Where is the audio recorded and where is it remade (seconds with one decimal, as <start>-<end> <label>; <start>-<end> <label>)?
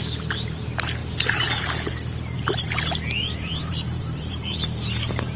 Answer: 0.0-3.2 recorded; 3.2-5.4 remade